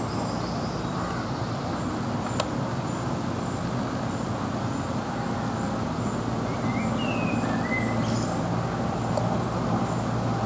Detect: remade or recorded recorded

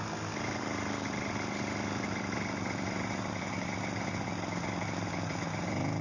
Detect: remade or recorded recorded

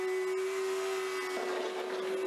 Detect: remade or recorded recorded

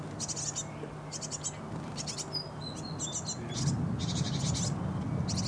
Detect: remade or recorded recorded